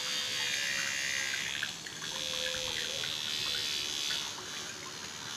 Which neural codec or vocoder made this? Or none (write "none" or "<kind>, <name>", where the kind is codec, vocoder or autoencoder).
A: none